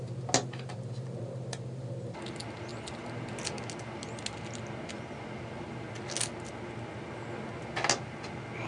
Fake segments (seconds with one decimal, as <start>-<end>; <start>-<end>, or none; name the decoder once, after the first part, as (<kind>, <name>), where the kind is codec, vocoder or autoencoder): none